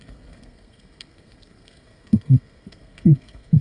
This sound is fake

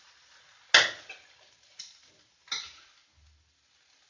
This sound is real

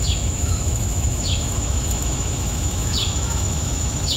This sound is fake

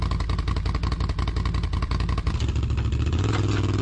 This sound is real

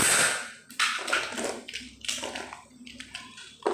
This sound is real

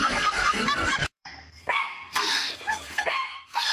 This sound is fake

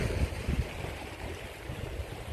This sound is fake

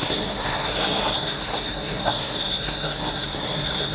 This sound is fake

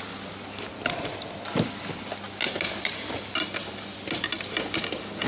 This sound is real